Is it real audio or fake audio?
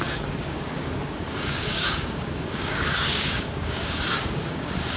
fake